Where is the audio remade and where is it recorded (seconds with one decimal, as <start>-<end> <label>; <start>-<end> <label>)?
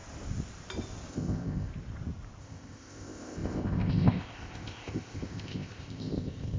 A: 0.0-1.1 recorded; 1.1-1.7 remade; 1.7-2.4 recorded; 2.4-6.6 remade